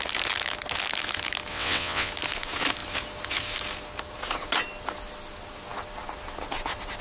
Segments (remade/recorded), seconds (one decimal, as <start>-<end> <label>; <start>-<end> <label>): 0.0-1.5 recorded; 1.5-2.1 remade; 2.1-7.0 recorded